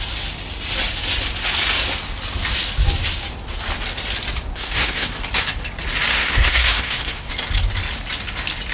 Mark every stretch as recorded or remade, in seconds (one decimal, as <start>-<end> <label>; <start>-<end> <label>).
0.0-4.5 recorded; 4.5-5.2 remade; 5.2-6.1 recorded; 6.1-7.3 remade; 7.3-8.7 recorded